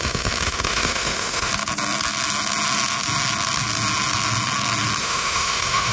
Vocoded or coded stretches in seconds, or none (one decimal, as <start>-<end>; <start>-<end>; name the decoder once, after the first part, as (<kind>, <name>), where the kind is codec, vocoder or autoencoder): 0.0-1.5 (autoencoder, DAC-VAE); 5.0-5.9